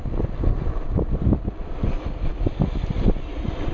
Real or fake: real